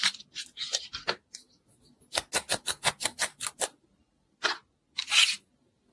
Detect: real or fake real